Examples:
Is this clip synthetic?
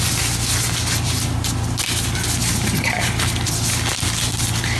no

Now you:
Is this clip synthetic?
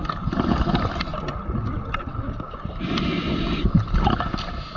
no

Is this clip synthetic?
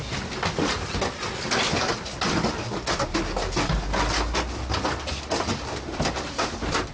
no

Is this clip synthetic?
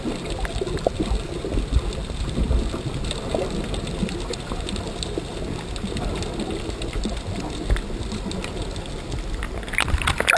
no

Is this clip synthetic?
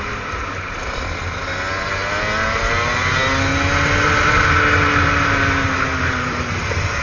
no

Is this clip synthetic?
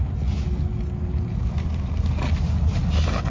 no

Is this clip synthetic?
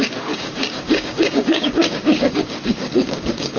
yes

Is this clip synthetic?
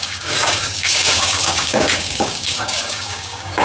yes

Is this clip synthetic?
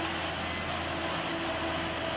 no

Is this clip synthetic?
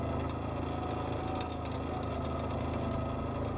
no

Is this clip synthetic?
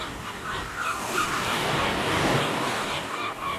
yes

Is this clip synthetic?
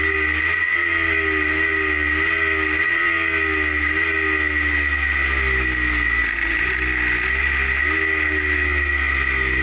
no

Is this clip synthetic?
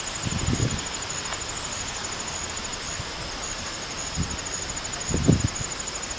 no